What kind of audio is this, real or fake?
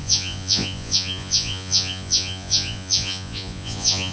fake